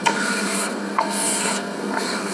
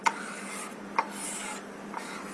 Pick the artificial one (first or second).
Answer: first